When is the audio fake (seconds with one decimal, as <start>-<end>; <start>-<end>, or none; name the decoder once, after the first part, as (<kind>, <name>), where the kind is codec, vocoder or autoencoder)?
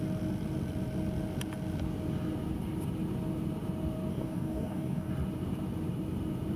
4.1-5.1 (codec, DAC)